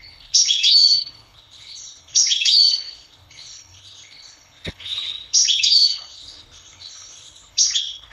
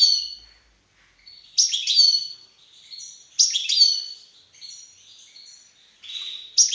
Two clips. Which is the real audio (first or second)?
second